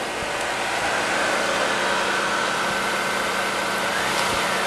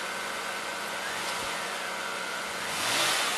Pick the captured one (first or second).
first